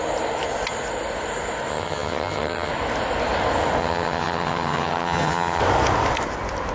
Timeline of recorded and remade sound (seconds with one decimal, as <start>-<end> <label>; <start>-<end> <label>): 0.0-1.7 recorded; 1.7-2.7 remade; 2.7-3.8 recorded; 3.8-5.6 remade; 5.6-6.7 recorded